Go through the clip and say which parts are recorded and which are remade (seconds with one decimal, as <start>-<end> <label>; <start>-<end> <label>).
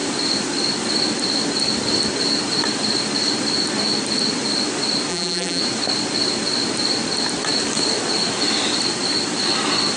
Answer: 0.0-5.1 recorded; 5.1-5.6 remade; 5.6-10.0 recorded